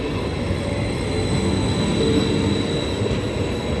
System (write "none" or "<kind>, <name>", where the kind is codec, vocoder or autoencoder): none